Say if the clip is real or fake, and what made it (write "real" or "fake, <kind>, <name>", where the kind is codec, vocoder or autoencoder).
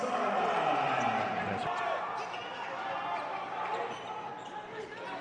real